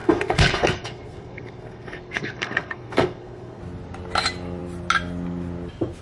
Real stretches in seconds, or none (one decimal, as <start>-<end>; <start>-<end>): 3.6-6.0